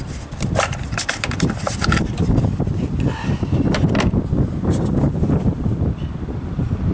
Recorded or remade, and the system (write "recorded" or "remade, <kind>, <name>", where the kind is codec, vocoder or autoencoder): remade, vocoder, BigVGAN v2